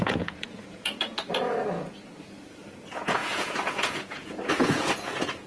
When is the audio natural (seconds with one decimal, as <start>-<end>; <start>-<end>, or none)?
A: 1.1-2.2